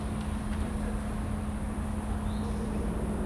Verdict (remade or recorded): recorded